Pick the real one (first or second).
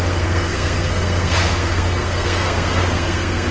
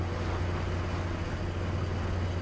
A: second